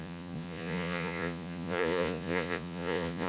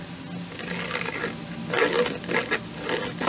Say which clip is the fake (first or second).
first